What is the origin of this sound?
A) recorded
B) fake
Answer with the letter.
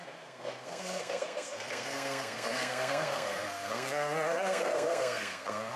B